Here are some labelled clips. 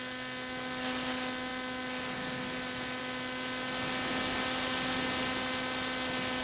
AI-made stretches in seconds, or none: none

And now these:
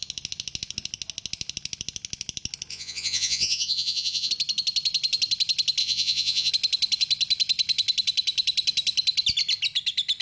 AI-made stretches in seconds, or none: 2.7-4.3; 5.8-6.5